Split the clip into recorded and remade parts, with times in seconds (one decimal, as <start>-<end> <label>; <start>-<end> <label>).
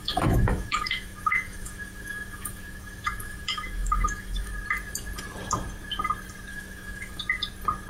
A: 0.0-4.5 remade; 4.5-6.5 recorded; 6.5-7.2 remade; 7.2-7.9 recorded